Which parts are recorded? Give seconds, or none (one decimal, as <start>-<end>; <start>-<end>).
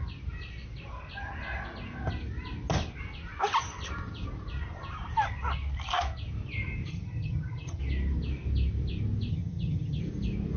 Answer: 0.0-6.9; 7.8-9.3; 10.0-10.6